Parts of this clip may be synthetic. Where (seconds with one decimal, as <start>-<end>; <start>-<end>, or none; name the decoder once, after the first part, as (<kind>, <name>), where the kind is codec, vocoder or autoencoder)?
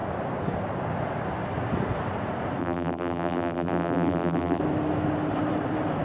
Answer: 2.6-4.6 (vocoder, BigVGAN v2)